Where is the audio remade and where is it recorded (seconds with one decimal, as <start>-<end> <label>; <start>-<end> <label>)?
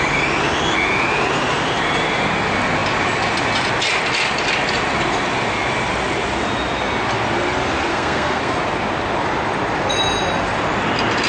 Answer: 0.0-7.9 recorded; 7.9-8.6 remade; 8.6-11.3 recorded